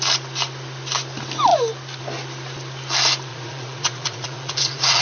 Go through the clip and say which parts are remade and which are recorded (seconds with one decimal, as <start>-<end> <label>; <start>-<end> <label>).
0.0-3.3 recorded; 3.3-5.0 remade